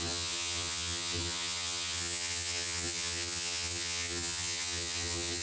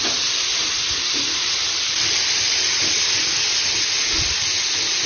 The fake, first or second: first